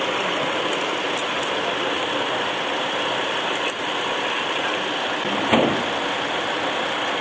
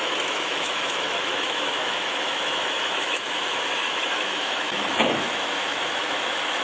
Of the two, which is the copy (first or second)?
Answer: second